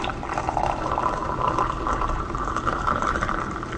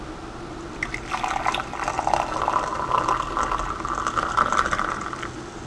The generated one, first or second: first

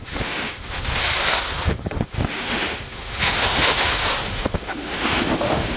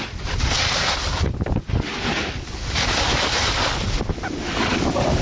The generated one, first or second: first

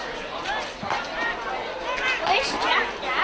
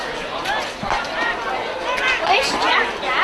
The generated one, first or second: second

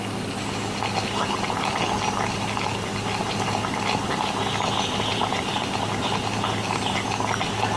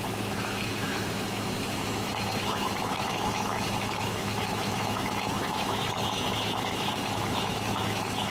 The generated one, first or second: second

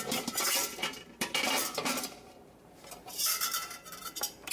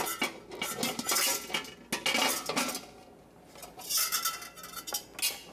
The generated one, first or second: first